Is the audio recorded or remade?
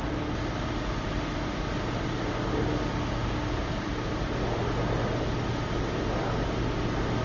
recorded